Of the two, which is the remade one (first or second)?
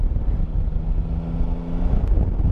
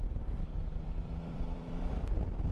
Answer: second